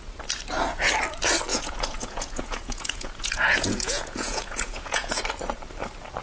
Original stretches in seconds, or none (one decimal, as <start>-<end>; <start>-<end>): 0.0-1.5; 5.2-6.2